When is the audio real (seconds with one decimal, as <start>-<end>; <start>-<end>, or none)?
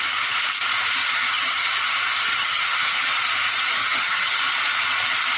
0.0-1.0; 1.6-2.3; 3.1-3.8; 4.4-5.4